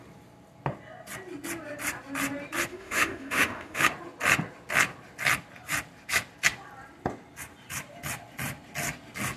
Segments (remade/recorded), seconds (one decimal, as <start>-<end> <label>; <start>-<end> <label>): 0.0-2.7 recorded; 2.7-3.8 remade; 3.8-9.4 recorded